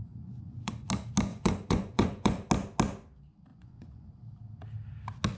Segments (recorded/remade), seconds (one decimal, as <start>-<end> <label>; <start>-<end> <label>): 0.0-0.7 remade; 0.7-1.3 recorded; 1.3-2.5 remade; 2.5-3.5 recorded; 3.5-4.1 remade; 4.1-5.4 recorded